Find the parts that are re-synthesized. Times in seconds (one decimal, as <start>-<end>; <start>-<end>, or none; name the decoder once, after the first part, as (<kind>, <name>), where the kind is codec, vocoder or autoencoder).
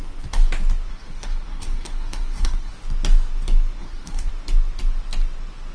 0.9-2.7 (codec, SNAC); 3.8-4.3